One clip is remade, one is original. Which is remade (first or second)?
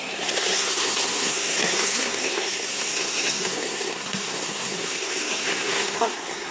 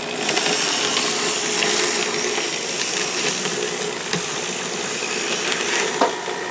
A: first